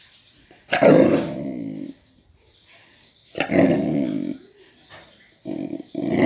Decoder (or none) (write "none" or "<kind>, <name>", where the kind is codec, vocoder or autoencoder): none